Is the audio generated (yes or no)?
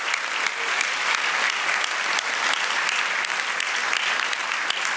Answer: no